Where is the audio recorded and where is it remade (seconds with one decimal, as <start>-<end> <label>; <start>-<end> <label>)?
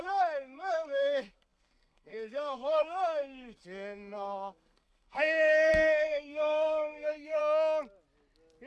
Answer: 0.0-7.4 remade; 7.4-8.7 recorded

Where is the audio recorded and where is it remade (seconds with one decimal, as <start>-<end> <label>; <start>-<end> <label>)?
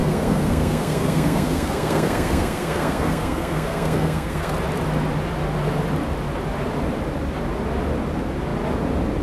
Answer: 0.0-4.5 remade; 4.5-9.2 recorded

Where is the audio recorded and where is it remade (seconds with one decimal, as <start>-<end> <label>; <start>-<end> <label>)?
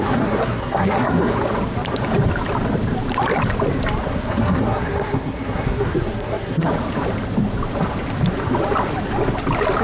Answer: 0.0-1.3 remade; 1.3-4.0 recorded; 4.0-6.7 remade; 6.7-9.8 recorded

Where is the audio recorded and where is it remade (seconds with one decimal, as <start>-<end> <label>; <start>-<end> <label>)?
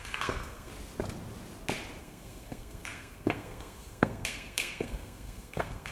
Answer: 0.0-0.7 remade; 0.7-2.0 recorded; 2.0-5.9 remade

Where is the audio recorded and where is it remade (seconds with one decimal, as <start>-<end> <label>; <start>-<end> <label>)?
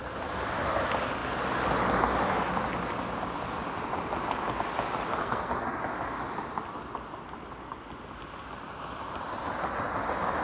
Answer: 0.0-5.2 recorded; 5.2-5.8 remade; 5.8-10.4 recorded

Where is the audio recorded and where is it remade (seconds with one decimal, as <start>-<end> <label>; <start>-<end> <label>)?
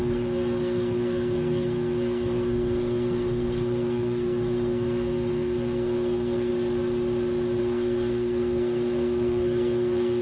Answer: 0.0-6.5 remade; 6.5-7.6 recorded; 7.6-10.2 remade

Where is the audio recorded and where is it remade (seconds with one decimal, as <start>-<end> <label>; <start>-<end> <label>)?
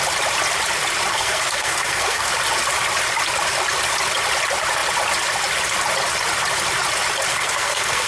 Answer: 0.0-1.1 recorded; 1.1-2.3 remade; 2.3-7.3 recorded; 7.3-8.1 remade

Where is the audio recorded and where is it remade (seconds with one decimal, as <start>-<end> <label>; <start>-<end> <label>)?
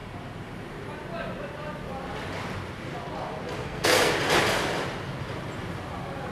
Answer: 0.0-3.6 recorded; 3.6-4.1 remade; 4.1-6.3 recorded